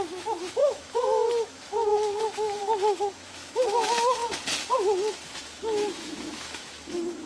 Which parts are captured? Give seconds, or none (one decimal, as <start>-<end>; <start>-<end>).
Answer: 4.2-5.4